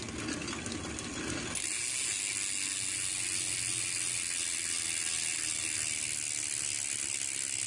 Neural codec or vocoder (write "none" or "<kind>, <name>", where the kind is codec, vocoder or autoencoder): none